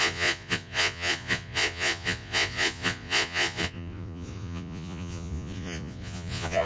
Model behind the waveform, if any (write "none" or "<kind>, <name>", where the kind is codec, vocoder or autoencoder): vocoder, Vocos